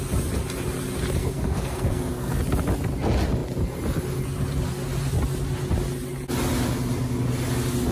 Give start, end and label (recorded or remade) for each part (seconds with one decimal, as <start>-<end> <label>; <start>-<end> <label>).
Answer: 0.0-1.2 recorded; 1.2-2.4 remade; 2.4-7.9 recorded